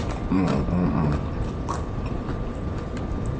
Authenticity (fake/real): real